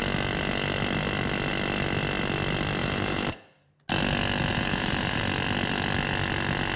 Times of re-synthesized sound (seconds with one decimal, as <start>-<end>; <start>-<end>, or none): 2.8-3.7; 4.5-5.2